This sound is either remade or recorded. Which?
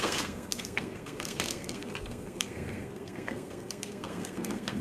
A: remade